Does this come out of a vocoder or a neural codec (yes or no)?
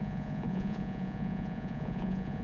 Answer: yes